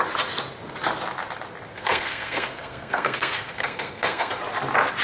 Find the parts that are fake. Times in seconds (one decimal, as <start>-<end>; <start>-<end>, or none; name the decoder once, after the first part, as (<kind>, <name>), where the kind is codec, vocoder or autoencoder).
1.7-4.3 (codec, SNAC)